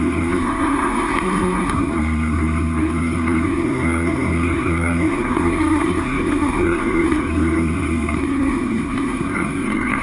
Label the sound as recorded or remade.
remade